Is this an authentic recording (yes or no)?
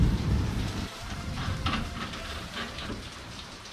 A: no